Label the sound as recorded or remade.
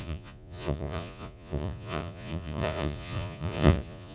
remade